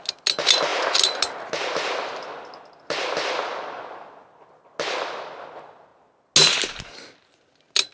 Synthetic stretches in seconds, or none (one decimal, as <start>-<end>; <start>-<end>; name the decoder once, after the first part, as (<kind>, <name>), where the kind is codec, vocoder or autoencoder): none